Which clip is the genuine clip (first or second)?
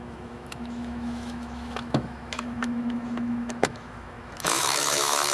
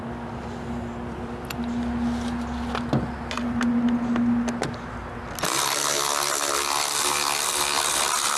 second